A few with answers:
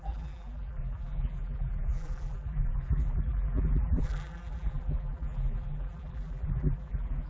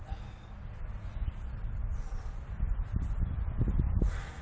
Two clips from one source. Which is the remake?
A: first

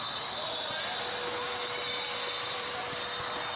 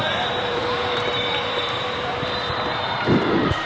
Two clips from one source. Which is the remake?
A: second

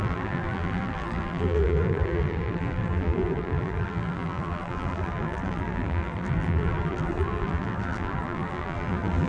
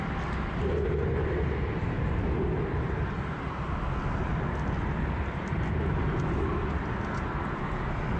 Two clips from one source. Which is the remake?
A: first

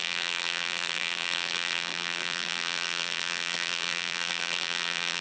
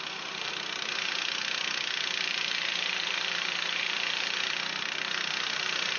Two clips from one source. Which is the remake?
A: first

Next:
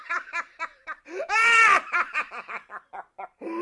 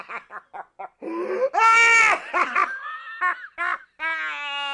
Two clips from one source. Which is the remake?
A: first